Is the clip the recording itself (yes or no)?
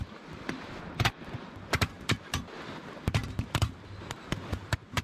yes